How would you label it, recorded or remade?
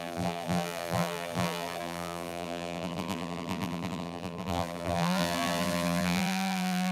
remade